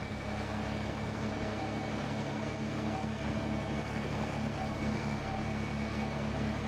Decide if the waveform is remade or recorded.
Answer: remade